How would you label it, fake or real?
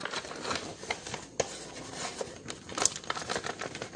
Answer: real